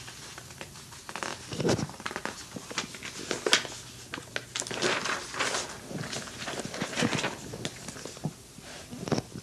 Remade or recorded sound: recorded